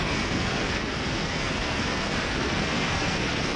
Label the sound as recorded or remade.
remade